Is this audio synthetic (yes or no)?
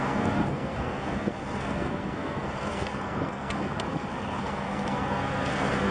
yes